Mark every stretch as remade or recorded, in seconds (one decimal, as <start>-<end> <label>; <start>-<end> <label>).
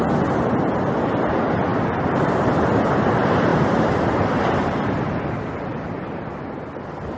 0.0-1.7 recorded; 1.7-2.5 remade; 2.5-3.5 recorded; 3.5-6.2 remade; 6.2-7.2 recorded